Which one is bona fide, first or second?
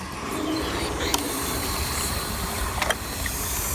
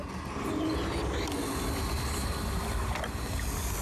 second